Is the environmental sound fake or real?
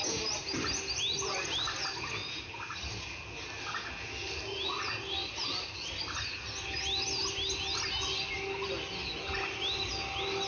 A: real